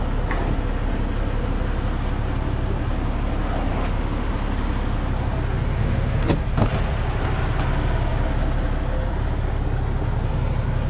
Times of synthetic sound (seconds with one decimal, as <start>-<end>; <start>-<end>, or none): 3.7-4.3; 5.8-6.3